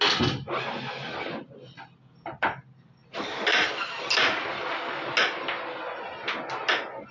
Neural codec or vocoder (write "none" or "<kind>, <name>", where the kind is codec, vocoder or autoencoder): none